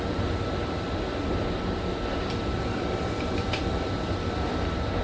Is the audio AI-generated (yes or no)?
yes